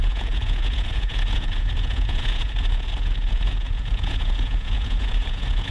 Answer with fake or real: fake